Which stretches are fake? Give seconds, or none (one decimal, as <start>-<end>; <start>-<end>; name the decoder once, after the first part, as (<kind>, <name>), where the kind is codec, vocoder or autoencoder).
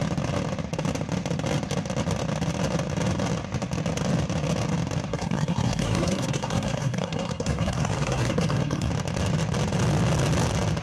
5.1-8.9 (codec, SNAC)